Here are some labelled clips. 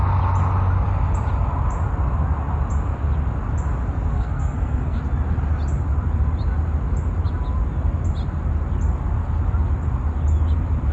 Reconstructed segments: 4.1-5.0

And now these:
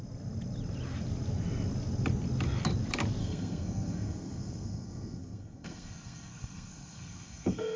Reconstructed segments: 3.2-7.8

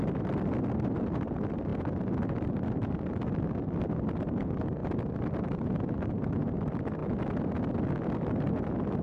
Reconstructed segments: none

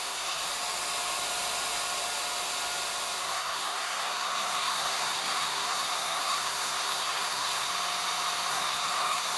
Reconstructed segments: 0.0-0.4; 3.2-7.7; 8.5-9.4

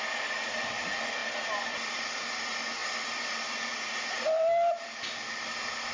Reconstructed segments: none